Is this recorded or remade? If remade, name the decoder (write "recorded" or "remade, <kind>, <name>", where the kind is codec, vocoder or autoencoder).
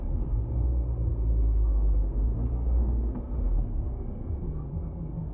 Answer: remade, codec, SNAC